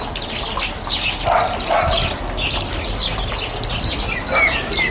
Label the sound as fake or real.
real